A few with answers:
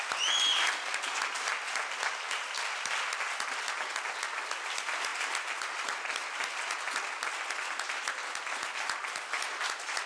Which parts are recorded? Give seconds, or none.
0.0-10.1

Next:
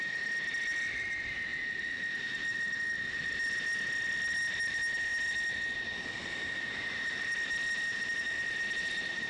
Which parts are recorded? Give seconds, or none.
0.0-9.3

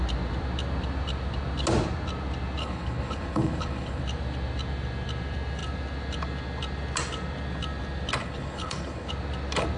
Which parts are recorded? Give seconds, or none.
0.0-2.6; 4.0-8.2; 9.1-9.8

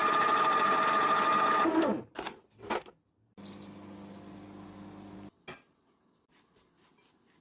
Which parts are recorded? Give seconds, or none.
0.0-7.4